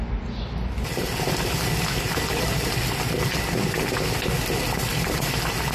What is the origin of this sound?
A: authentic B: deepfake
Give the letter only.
A